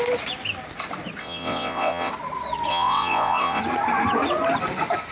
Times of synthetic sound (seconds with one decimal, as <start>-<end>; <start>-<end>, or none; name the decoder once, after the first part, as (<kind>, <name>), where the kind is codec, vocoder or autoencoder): 1.2-2.1 (vocoder, WaveNeXt); 2.7-3.6